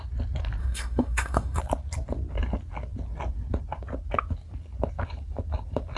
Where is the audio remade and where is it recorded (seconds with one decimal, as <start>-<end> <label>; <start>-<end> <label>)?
0.0-0.6 recorded; 0.6-1.6 remade; 1.6-6.0 recorded